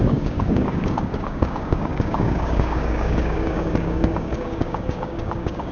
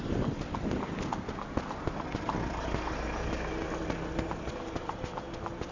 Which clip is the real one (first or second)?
second